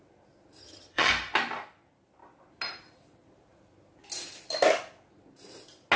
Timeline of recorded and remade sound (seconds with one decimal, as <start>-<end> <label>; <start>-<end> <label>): 0.0-0.6 recorded; 0.6-1.1 remade; 1.1-6.0 recorded